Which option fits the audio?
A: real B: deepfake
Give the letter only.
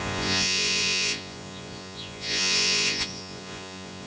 B